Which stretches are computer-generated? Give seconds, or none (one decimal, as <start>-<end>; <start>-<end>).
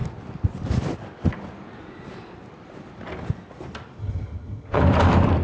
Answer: 4.0-4.8